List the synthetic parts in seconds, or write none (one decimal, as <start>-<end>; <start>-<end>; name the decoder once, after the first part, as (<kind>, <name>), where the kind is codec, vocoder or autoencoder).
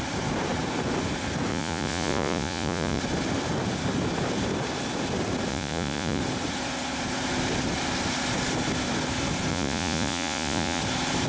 1.5-3.0 (vocoder, Vocos); 5.5-6.2; 9.5-10.8